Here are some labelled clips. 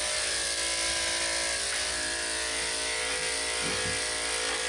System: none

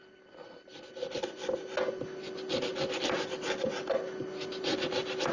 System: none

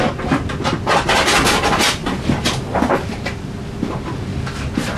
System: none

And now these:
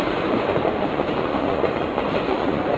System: vocoder, Vocos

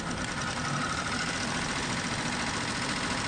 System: none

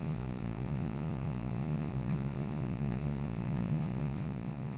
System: vocoder, Vocos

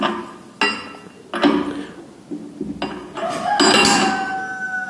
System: none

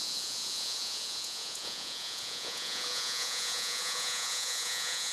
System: vocoder, Vocos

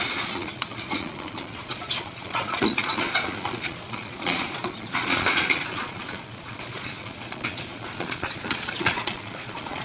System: vocoder, Vocos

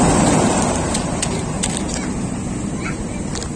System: none